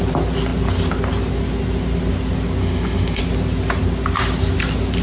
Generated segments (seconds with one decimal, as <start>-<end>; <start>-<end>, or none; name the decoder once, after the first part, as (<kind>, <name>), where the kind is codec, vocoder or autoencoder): 2.6-3.2 (autoencoder, DAC-VAE)